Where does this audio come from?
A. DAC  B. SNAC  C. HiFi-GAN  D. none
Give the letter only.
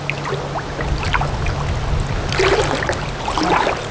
D